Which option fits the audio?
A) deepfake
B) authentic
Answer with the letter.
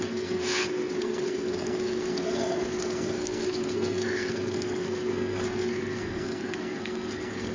A